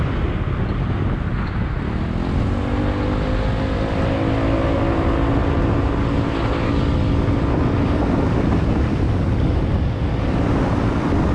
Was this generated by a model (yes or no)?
no